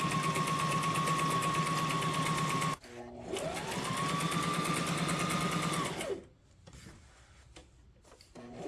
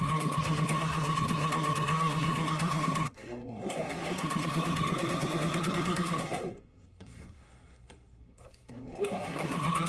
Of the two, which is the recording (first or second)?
first